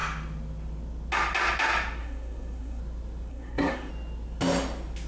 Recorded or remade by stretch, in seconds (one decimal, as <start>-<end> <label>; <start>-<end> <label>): 0.0-2.0 recorded; 2.0-2.8 remade; 2.8-3.3 recorded; 3.3-3.9 remade; 3.9-5.1 recorded